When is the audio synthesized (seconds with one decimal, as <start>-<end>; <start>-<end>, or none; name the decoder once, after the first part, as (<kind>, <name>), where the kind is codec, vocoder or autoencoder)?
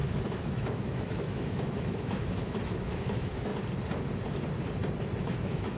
0.0-3.5 (autoencoder, DAC-VAE); 5.2-5.8